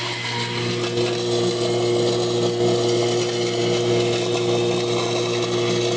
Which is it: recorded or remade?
recorded